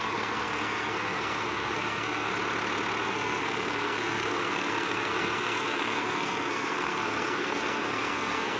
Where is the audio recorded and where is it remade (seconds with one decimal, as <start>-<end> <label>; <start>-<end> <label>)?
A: 0.0-2.3 remade; 2.3-3.0 recorded; 3.0-8.6 remade